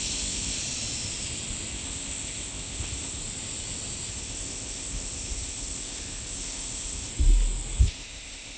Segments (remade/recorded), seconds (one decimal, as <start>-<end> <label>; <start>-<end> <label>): 0.0-0.6 remade; 0.6-1.7 recorded; 1.7-3.2 remade; 3.2-4.1 recorded; 4.1-7.1 remade; 7.1-7.8 recorded; 7.8-8.6 remade